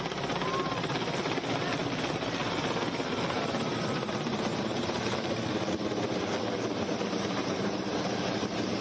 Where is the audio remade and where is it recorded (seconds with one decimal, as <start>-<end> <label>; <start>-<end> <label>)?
0.0-4.5 recorded; 4.5-5.0 remade; 5.0-7.4 recorded; 7.4-8.8 remade